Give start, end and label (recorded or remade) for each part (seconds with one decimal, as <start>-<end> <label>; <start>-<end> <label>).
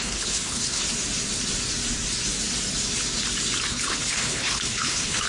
0.0-0.8 remade; 0.8-3.7 recorded; 3.7-5.3 remade